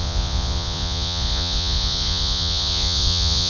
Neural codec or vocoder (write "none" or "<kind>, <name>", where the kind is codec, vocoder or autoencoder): vocoder, Vocos